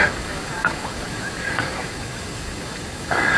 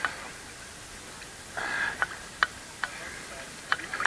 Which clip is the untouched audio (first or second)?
second